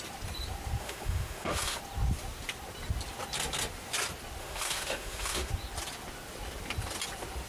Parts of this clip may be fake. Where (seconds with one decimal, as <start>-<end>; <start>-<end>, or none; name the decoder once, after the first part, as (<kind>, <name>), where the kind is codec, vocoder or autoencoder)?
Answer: 0.8-1.8 (autoencoder, DAC-VAE); 4.4-5.5